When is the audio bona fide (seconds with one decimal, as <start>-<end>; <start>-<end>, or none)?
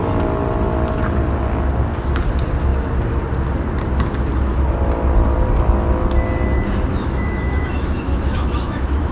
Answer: 0.0-6.9